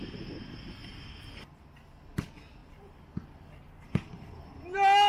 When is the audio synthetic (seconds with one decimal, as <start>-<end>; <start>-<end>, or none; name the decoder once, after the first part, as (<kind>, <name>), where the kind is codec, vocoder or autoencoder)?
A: 2.6-4.4 (vocoder, BigVGAN v2)